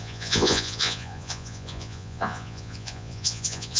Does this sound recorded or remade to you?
remade